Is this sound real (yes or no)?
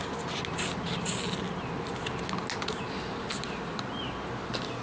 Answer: yes